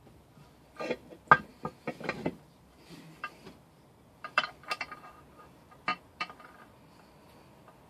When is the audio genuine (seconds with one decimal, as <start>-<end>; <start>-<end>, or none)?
0.0-1.5; 4.4-5.9; 7.2-7.9